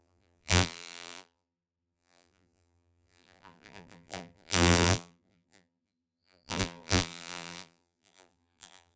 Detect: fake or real fake